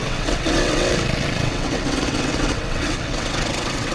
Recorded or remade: remade